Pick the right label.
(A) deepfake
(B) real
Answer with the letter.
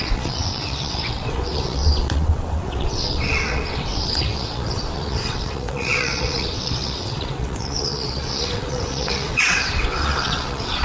A